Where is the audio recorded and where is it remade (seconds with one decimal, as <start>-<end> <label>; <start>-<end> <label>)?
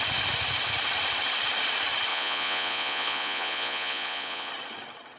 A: 0.0-2.1 recorded; 2.1-4.5 remade; 4.5-5.2 recorded